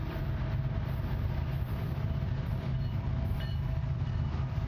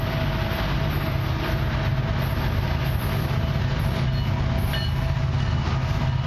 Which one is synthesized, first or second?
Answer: first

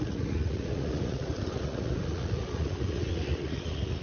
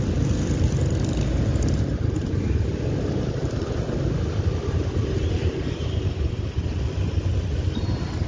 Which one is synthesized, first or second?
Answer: first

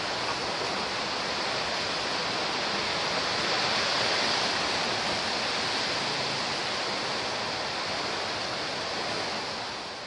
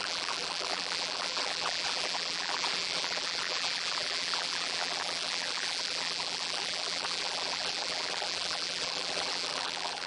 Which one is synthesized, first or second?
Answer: second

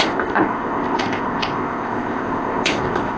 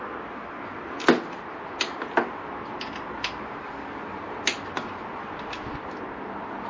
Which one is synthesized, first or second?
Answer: first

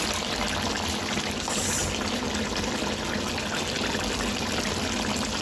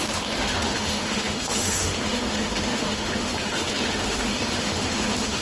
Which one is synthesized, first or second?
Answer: second